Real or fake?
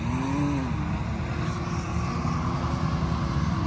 real